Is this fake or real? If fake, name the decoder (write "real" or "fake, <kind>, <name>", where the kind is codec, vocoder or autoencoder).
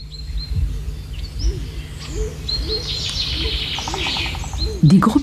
real